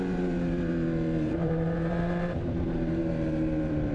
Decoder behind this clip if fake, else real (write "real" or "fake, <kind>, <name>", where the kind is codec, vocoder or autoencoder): fake, vocoder, BigVGAN v2